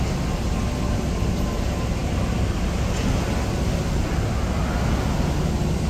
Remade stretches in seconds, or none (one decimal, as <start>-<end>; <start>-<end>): none